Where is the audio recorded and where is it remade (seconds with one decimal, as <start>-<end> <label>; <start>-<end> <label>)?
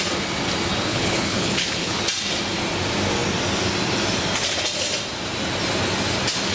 0.0-0.9 recorded; 0.9-2.0 remade; 2.0-6.5 recorded